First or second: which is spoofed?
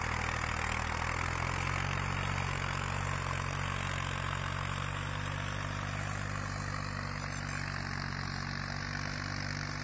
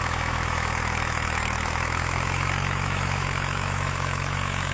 second